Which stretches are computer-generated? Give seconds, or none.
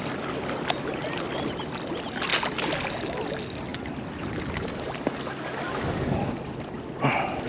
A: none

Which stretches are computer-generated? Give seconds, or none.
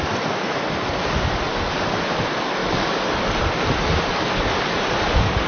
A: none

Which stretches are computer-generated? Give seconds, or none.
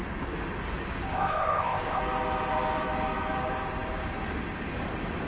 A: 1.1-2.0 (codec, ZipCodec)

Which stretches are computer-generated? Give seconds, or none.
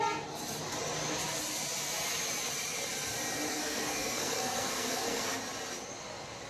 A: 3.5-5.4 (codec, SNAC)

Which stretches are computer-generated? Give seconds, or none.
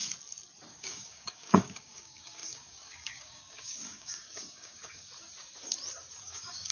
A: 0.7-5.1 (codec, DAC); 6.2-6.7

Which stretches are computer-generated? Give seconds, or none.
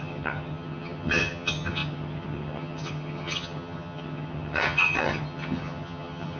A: 0.0-6.4 (vocoder, HiFi-GAN)